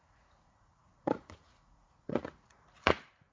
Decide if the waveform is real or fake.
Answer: fake